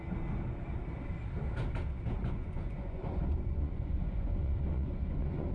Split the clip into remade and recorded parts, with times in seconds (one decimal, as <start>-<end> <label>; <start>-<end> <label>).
0.0-2.2 recorded; 2.2-5.5 remade